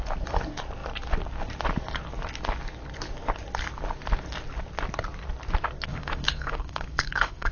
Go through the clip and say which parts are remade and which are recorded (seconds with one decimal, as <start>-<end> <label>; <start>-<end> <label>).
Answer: 0.0-5.9 recorded; 5.9-7.5 remade